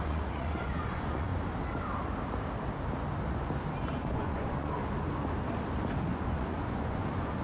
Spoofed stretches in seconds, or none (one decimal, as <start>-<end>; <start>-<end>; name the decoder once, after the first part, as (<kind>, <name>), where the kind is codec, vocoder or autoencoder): 0.0-1.3 (vocoder, Vocos); 4.0-4.8; 6.1-7.4